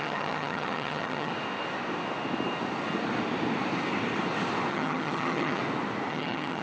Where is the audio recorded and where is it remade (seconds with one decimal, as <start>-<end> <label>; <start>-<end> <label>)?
0.0-1.3 remade; 1.3-4.7 recorded; 4.7-5.6 remade; 5.6-6.1 recorded; 6.1-6.6 remade